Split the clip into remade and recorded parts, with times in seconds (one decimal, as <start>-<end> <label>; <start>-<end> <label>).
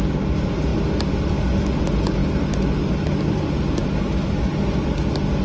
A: 0.0-5.4 recorded